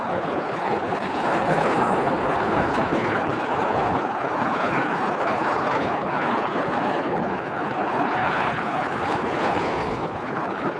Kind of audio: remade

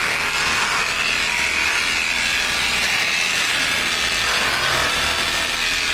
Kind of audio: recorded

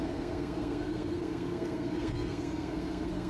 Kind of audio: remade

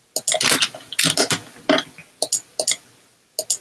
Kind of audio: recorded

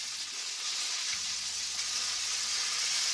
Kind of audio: remade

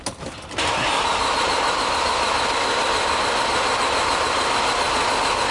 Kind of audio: recorded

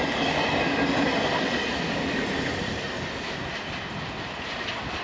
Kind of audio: recorded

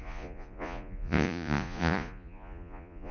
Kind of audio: remade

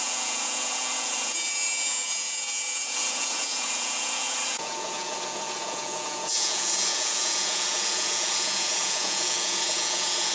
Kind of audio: remade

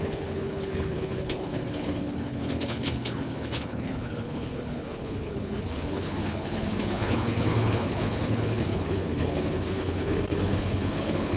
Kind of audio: remade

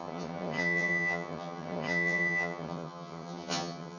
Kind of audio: remade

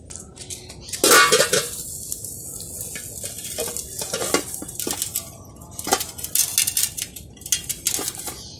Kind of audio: recorded